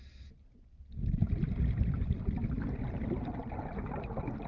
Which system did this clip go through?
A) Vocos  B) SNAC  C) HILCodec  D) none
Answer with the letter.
D